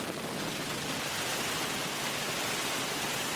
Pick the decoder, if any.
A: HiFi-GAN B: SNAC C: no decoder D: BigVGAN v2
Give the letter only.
D